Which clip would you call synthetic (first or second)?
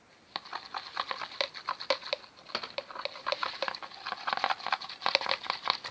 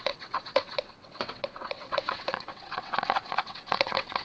second